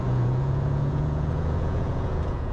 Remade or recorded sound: remade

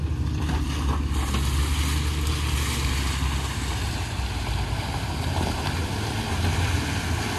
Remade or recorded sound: recorded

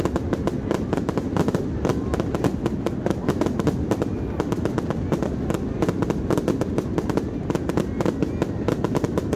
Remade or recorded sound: recorded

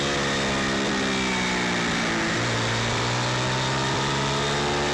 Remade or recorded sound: recorded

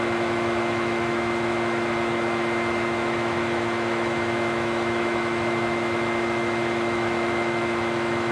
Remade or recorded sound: remade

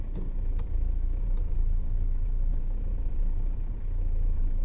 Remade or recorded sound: remade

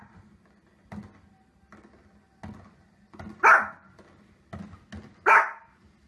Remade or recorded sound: recorded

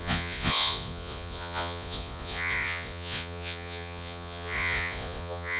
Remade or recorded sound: remade